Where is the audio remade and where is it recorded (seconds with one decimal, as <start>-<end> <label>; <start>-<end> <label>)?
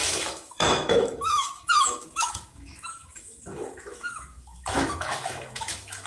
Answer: 0.0-6.1 remade